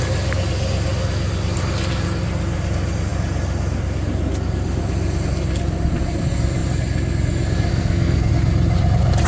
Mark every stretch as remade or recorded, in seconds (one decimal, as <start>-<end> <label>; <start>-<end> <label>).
0.0-7.7 recorded; 7.7-8.3 remade; 8.3-9.3 recorded